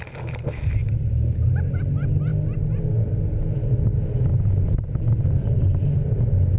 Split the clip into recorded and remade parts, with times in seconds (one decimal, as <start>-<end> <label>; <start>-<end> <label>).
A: 0.0-6.6 recorded